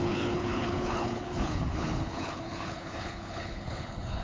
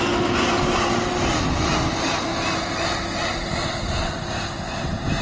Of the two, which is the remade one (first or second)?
first